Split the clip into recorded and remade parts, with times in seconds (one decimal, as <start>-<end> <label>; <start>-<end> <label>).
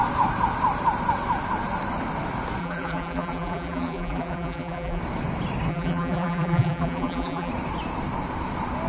0.0-2.6 recorded; 2.6-5.0 remade; 5.0-5.7 recorded; 5.7-7.5 remade; 7.5-8.9 recorded